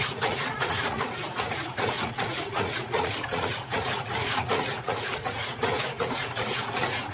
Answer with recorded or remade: remade